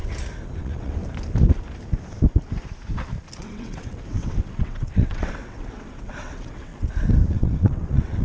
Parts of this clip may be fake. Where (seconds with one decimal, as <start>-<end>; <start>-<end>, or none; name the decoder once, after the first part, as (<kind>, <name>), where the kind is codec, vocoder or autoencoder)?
0.6-1.0 (vocoder, WaveNeXt); 3.4-6.7; 7.3-8.2